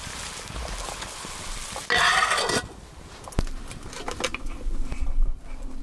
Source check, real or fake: real